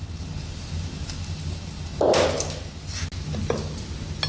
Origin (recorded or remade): recorded